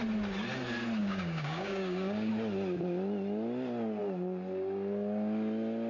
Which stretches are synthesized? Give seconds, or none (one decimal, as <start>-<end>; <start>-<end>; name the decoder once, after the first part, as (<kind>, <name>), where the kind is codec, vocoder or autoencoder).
1.0-2.3 (codec, DAC)